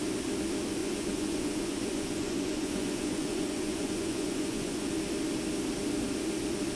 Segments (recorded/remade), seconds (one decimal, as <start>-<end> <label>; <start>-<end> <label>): 0.0-0.8 recorded; 0.8-4.9 remade; 4.9-6.8 recorded